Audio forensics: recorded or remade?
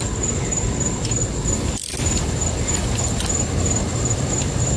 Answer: recorded